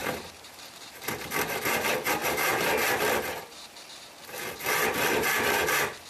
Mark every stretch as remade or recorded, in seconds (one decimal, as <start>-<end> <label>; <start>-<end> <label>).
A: 0.0-1.6 remade; 1.6-2.2 recorded; 2.2-2.7 remade; 2.7-6.1 recorded